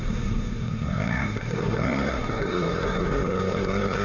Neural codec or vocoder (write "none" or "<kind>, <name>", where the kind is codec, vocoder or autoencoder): codec, SNAC